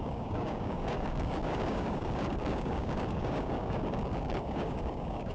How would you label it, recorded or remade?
remade